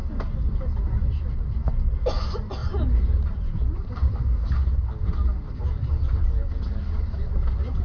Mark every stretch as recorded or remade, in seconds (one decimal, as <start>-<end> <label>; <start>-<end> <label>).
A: 0.0-2.6 recorded; 2.6-4.6 remade; 4.6-5.6 recorded; 5.6-6.2 remade; 6.2-7.8 recorded